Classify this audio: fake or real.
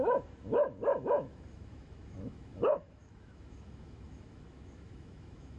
fake